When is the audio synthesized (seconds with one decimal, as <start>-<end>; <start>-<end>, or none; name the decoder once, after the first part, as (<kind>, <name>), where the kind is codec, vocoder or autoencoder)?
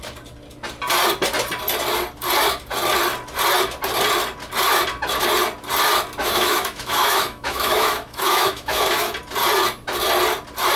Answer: 6.2-9.1 (autoencoder, DAC-VAE)